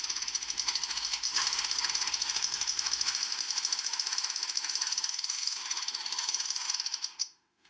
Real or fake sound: fake